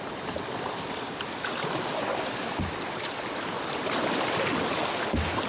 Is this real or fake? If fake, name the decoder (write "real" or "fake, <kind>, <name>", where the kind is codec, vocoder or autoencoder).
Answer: real